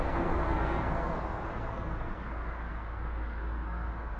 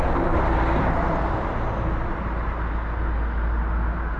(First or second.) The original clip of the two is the second